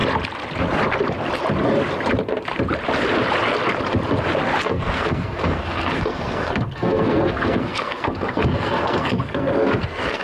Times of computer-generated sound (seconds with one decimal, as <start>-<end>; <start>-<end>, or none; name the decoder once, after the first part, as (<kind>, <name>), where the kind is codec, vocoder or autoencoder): 4.6-10.2 (codec, SNAC)